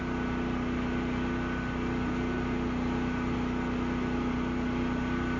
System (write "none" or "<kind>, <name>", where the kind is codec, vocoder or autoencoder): none